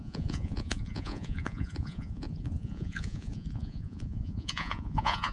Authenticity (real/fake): fake